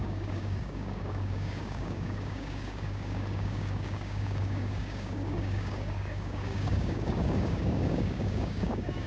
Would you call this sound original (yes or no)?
no